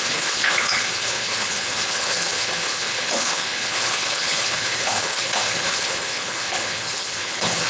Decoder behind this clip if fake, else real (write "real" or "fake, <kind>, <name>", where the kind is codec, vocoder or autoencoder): fake, codec, HILCodec